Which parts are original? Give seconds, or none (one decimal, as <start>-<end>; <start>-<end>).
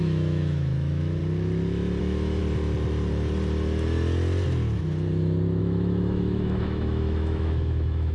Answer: 1.2-2.0; 2.4-5.6